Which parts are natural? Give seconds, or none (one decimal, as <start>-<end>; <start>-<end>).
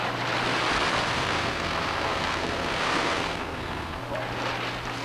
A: 0.0-1.0; 4.0-5.0